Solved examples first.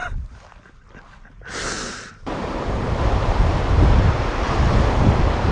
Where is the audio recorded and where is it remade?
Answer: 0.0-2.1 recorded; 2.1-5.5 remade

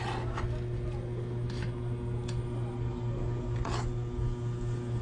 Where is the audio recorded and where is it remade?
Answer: 0.0-5.0 recorded

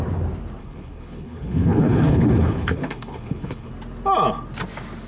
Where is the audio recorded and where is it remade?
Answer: 0.0-0.6 recorded; 0.6-3.7 remade; 3.7-5.1 recorded

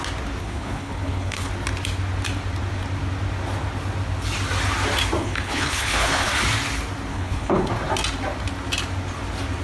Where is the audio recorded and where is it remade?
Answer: 0.0-0.4 recorded; 0.4-1.5 remade; 1.5-5.2 recorded; 5.2-6.3 remade; 6.3-7.1 recorded; 7.1-7.7 remade; 7.7-9.6 recorded

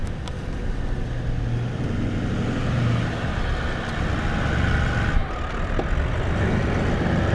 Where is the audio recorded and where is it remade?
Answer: 0.0-7.3 recorded

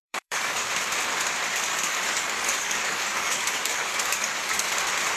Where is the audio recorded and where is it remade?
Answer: 0.0-0.7 remade; 0.7-1.7 recorded; 1.7-4.8 remade; 4.8-5.2 recorded